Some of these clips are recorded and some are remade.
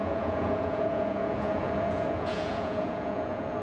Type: remade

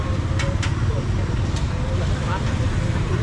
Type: recorded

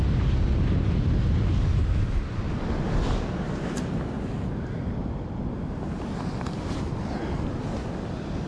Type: recorded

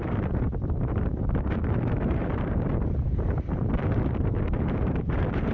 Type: remade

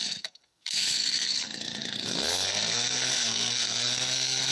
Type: remade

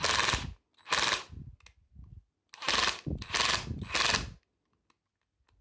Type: recorded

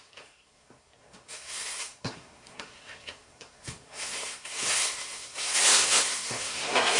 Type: remade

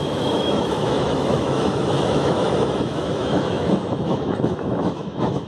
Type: remade